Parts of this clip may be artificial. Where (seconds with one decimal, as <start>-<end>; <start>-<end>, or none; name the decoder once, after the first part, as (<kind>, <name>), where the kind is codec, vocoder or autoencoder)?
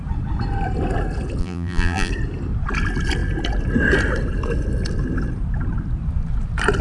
1.4-2.1 (vocoder, BigVGAN v2)